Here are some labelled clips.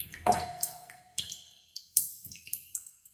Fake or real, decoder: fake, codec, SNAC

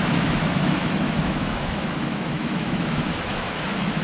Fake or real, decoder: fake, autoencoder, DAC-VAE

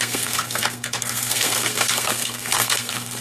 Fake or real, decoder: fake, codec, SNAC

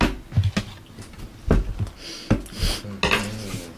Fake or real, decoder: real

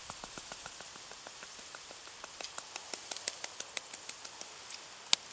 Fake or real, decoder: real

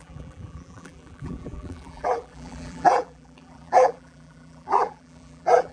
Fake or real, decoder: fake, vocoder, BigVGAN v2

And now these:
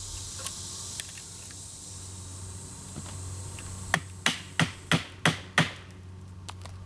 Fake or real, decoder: real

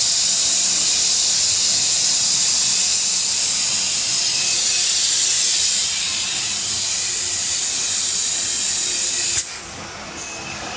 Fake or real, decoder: real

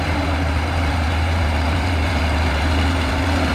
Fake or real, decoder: fake, vocoder, BigVGAN v2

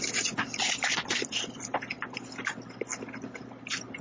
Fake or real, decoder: real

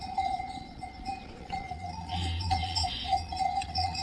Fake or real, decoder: fake, vocoder, Vocos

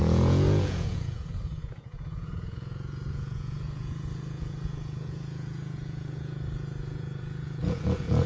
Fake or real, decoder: fake, vocoder, Vocos